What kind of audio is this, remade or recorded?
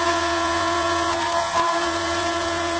remade